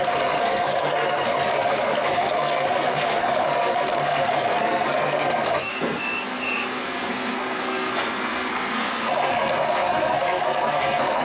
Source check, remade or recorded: remade